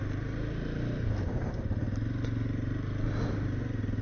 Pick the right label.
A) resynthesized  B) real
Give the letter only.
B